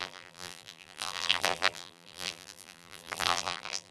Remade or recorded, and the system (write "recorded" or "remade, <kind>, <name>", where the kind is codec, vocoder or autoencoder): remade, vocoder, BigVGAN v2